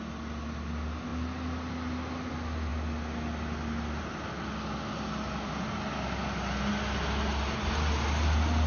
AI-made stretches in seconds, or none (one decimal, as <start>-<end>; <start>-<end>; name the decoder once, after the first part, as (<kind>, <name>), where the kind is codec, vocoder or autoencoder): none